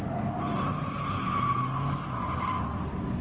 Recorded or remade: recorded